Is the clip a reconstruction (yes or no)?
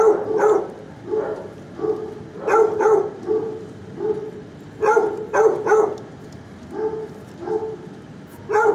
no